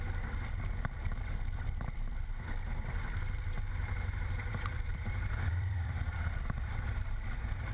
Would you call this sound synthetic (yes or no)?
yes